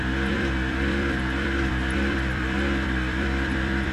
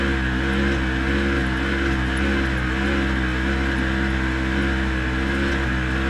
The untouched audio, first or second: second